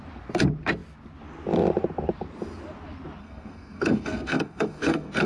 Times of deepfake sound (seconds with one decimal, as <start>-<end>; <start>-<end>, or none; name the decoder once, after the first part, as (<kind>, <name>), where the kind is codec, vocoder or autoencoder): 3.2-5.3 (codec, SNAC)